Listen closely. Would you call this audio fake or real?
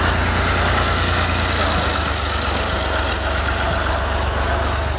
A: real